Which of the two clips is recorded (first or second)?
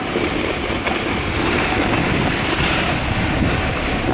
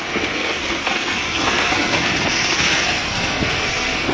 first